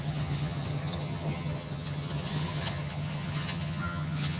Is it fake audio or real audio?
fake